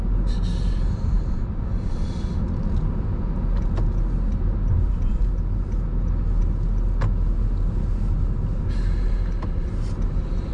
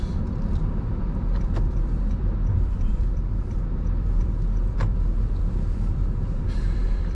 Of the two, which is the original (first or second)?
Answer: first